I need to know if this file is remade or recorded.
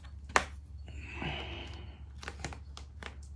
recorded